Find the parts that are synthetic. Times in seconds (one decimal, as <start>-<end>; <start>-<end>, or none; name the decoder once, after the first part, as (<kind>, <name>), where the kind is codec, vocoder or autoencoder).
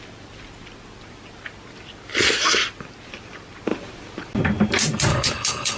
5.1-5.8 (codec, HILCodec)